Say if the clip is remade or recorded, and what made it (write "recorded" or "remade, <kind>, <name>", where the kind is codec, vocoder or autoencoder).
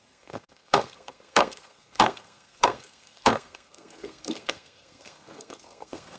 remade, codec, SNAC